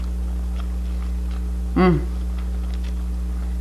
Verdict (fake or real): real